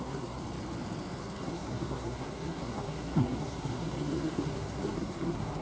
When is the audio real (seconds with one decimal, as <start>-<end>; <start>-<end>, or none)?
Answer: 0.4-1.2